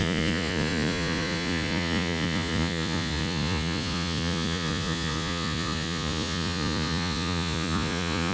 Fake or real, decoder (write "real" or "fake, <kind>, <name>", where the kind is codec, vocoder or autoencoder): fake, vocoder, Vocos